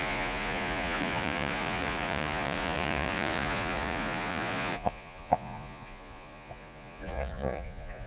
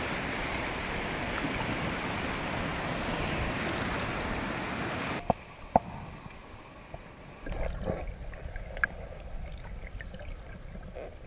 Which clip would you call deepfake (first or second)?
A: first